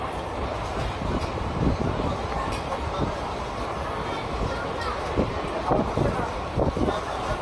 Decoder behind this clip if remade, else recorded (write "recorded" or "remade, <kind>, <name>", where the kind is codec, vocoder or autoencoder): remade, vocoder, BigVGAN v2